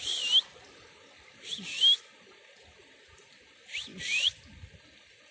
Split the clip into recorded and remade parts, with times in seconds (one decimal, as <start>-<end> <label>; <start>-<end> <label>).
0.0-3.9 recorded; 3.9-4.4 remade; 4.4-5.3 recorded